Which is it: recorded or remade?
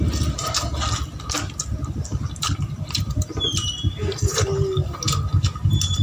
recorded